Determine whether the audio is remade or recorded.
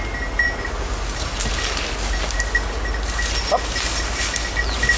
recorded